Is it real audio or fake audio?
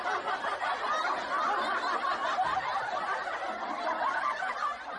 real